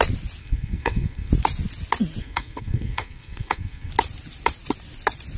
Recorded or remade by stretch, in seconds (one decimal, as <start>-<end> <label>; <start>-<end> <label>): 0.0-0.4 recorded; 0.4-1.3 remade; 1.3-2.2 recorded; 2.2-3.9 remade; 3.9-5.4 recorded